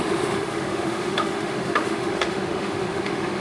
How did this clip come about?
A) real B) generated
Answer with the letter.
B